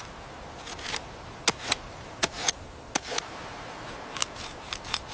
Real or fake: real